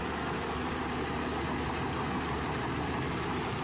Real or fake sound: real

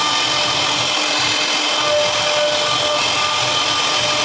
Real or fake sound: real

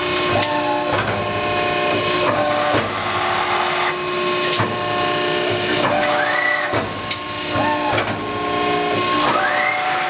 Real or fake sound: real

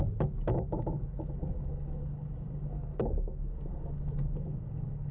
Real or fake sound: fake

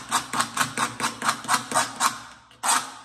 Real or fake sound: real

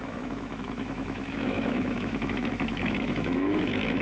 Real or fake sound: fake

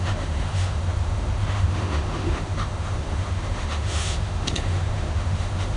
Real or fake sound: fake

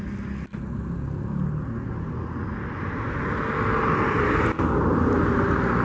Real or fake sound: real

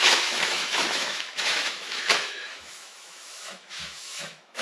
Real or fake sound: fake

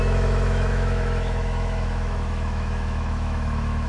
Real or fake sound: fake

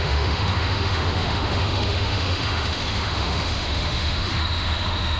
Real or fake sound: fake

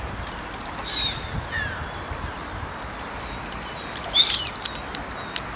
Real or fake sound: real